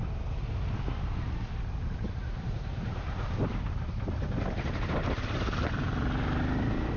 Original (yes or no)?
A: yes